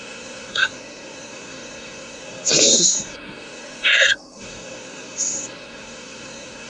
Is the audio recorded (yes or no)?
no